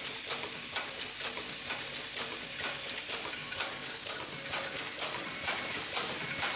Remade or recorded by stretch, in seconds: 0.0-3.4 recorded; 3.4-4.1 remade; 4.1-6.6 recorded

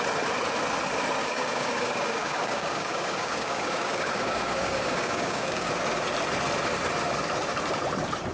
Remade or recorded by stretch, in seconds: 0.0-1.2 recorded; 1.2-5.7 remade; 5.7-8.3 recorded